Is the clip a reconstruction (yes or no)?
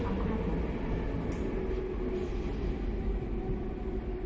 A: no